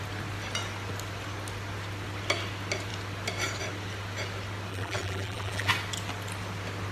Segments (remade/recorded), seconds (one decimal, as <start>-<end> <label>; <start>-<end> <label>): 0.0-4.7 recorded; 4.7-5.7 remade; 5.7-6.9 recorded

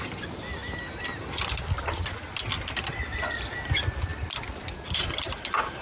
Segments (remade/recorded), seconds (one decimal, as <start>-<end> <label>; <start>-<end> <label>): 0.0-5.8 recorded

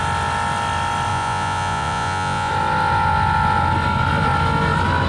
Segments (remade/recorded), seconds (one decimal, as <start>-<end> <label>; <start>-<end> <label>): 0.0-1.1 recorded; 1.1-2.5 remade; 2.5-5.1 recorded

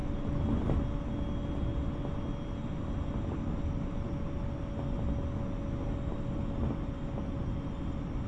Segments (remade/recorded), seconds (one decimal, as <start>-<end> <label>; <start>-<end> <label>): 0.0-8.3 recorded

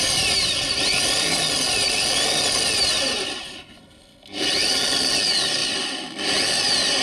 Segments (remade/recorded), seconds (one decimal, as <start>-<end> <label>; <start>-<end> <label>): 0.0-7.0 recorded